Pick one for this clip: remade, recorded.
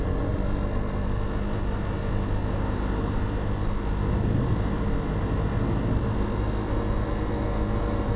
recorded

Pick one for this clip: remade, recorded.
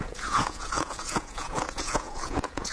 remade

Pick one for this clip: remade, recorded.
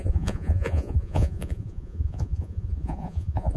remade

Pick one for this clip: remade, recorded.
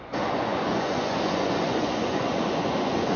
remade